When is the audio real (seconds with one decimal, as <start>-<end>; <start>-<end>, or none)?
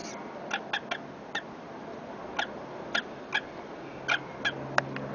0.0-5.1